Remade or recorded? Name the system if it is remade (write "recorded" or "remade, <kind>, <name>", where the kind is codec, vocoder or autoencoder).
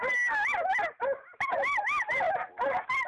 recorded